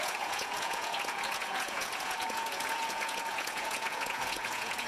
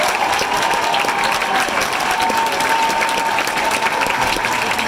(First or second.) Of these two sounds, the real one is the second